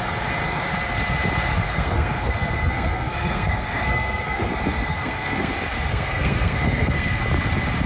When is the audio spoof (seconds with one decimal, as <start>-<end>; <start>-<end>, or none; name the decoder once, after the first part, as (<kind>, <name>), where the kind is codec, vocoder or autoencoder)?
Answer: 1.5-4.5 (codec, SNAC); 4.9-5.5; 5.9-7.2